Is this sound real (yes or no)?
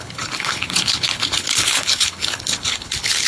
no